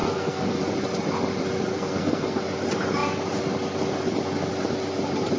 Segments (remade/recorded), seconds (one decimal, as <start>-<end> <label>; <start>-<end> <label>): 0.0-0.6 remade; 0.6-1.7 recorded; 1.7-2.4 remade; 2.4-5.4 recorded